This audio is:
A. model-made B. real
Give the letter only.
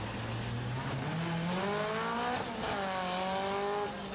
B